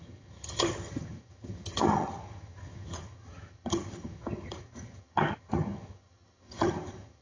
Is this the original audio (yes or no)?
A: no